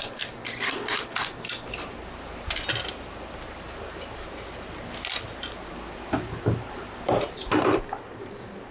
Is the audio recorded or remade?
recorded